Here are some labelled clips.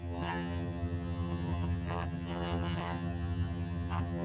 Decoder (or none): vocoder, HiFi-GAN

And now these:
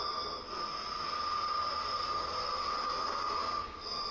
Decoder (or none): none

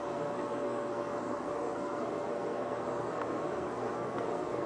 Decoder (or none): codec, SNAC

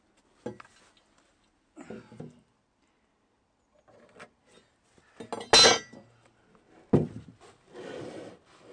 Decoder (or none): none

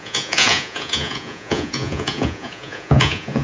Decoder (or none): vocoder, Vocos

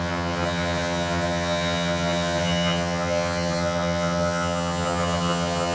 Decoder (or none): vocoder, HiFi-GAN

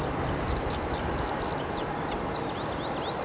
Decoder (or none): none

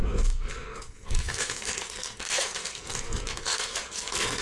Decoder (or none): codec, SNAC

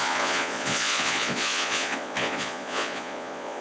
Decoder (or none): vocoder, Vocos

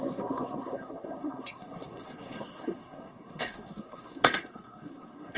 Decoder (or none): codec, SNAC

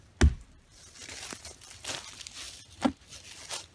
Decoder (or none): none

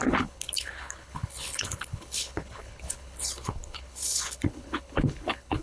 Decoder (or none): codec, HILCodec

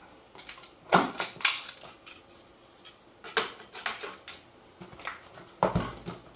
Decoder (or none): none